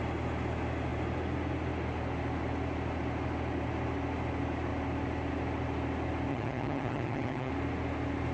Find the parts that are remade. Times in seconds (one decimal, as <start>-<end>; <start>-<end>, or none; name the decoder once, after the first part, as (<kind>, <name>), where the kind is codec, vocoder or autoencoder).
6.3-7.5 (vocoder, HiFi-GAN)